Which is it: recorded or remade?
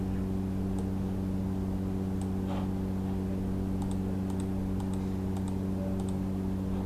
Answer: recorded